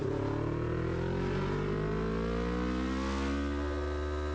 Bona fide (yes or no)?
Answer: yes